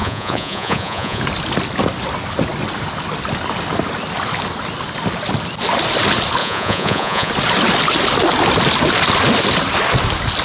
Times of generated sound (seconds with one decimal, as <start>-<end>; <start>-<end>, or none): 0.0-1.2; 6.4-7.3